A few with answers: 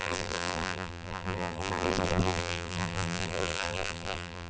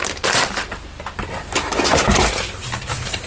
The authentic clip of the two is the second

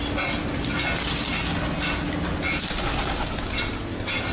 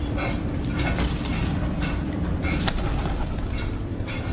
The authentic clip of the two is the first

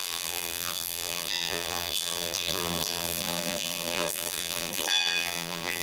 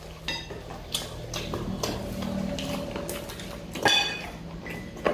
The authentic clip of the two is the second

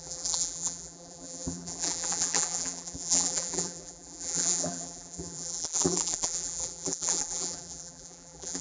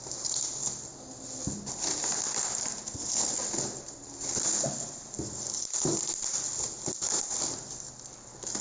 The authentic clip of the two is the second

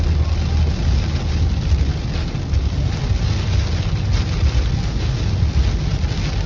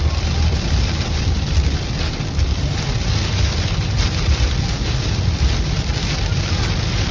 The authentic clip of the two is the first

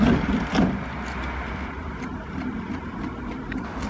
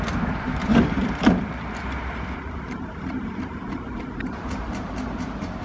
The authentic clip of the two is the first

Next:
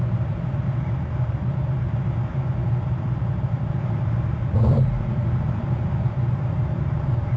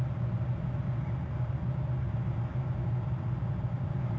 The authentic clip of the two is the second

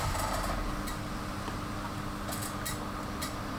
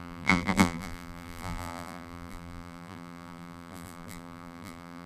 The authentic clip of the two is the first